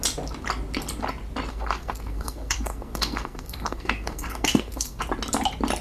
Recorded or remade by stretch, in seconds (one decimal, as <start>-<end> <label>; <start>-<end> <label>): 0.0-1.5 recorded; 1.5-5.0 remade; 5.0-5.8 recorded